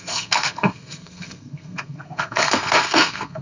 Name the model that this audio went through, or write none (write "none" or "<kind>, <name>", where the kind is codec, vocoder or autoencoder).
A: codec, SNAC